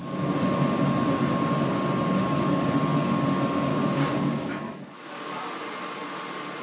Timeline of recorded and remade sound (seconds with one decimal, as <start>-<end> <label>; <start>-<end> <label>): 0.0-3.7 recorded; 3.7-4.5 remade; 4.5-6.6 recorded